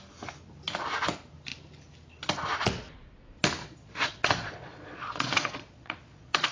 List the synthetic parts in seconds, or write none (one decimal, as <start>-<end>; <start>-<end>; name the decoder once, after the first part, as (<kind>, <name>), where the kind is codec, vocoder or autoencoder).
3.6-6.5 (vocoder, Vocos)